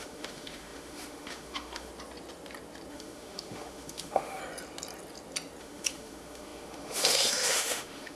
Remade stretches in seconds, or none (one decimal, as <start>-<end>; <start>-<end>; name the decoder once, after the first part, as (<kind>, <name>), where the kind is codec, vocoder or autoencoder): 0.0-1.9 (autoencoder, DAC-VAE); 2.9-4.4; 5.6-8.2